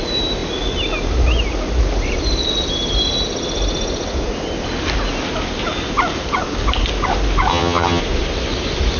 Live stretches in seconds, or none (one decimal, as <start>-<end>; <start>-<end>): 0.0-7.5; 8.0-9.0